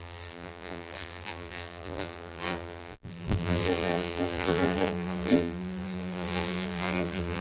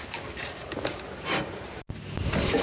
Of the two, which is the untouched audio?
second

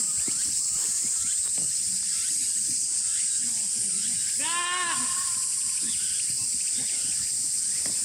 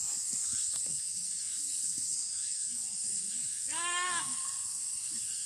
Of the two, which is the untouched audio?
first